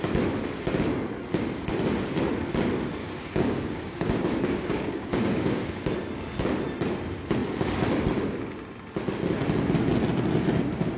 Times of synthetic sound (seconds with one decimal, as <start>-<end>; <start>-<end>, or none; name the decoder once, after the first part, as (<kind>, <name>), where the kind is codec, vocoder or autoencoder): 3.0-5.6 (codec, DAC)